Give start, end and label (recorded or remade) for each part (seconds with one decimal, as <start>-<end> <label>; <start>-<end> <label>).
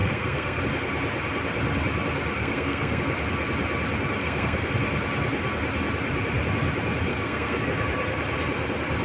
0.0-0.6 remade; 0.6-2.4 recorded; 2.4-3.0 remade; 3.0-4.2 recorded; 4.2-4.7 remade; 4.7-7.1 recorded; 7.1-7.6 remade; 7.6-9.0 recorded